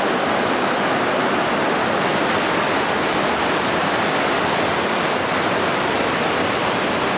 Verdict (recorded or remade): recorded